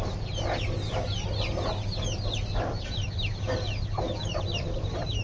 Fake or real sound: real